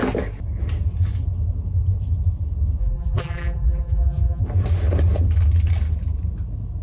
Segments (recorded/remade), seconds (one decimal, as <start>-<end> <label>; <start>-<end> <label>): 0.0-2.8 recorded; 2.8-4.4 remade; 4.4-6.8 recorded